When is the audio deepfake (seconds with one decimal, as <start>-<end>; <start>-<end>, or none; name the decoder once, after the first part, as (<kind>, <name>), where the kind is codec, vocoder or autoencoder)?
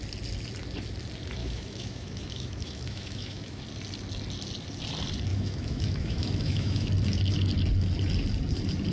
1.4-3.6 (autoencoder, DAC-VAE); 5.3-6.9